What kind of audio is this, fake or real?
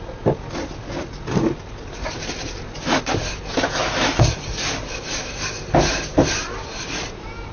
real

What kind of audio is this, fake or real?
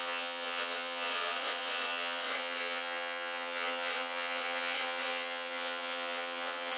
fake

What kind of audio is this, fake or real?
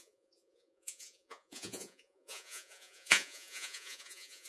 fake